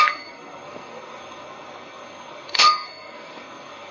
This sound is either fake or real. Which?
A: fake